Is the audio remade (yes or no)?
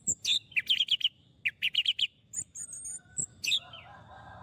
no